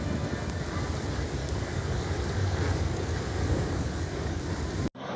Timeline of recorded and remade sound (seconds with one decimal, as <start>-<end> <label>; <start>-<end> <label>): 0.0-1.4 recorded; 1.4-4.5 remade; 4.5-5.2 recorded